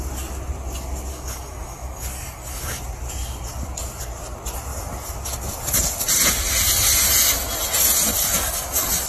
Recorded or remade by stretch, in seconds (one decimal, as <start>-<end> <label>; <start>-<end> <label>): 0.0-1.1 recorded; 1.1-2.8 remade; 2.8-8.2 recorded; 8.2-9.1 remade